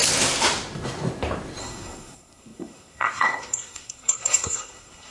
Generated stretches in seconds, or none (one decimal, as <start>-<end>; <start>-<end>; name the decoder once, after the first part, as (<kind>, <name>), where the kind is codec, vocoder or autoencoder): 1.6-5.1 (codec, SNAC)